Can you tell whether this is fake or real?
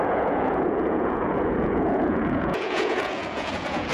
fake